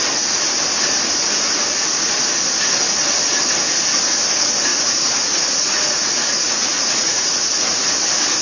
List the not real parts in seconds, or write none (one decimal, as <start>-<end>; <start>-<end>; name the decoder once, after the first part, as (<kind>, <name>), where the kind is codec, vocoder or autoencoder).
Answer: 4.7-7.9 (vocoder, Vocos)